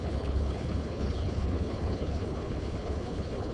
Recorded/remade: remade